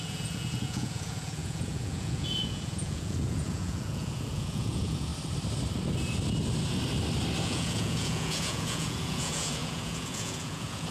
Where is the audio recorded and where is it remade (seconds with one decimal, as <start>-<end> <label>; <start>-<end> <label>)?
0.0-5.1 remade; 5.1-7.4 recorded; 7.4-10.9 remade